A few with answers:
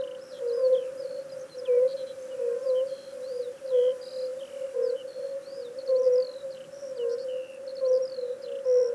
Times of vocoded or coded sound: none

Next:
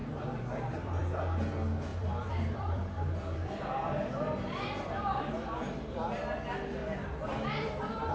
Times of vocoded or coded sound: 0.0-1.0 (vocoder, BigVGAN v2); 1.9-5.3; 6.8-8.1